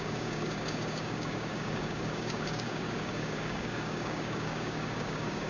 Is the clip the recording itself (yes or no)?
no